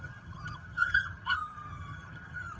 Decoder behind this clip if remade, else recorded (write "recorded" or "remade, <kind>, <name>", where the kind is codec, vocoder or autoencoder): remade, vocoder, HiFi-GAN